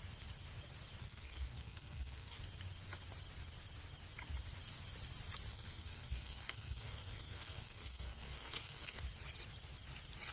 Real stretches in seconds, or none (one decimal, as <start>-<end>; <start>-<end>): 0.0-1.0; 2.4-5.5; 9.0-10.3